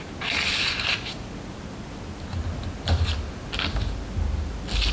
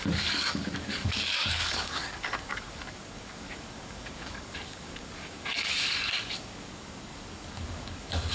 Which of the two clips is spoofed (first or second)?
second